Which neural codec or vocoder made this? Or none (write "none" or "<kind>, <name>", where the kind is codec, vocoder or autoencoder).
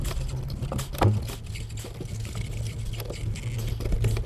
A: none